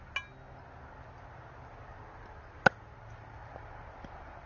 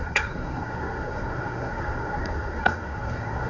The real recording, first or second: first